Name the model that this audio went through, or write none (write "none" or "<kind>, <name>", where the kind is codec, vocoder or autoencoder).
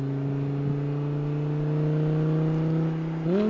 none